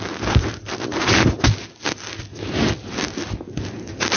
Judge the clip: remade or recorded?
recorded